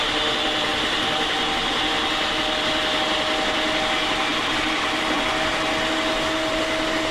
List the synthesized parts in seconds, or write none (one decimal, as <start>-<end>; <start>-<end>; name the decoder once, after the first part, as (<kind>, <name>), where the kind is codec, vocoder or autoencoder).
none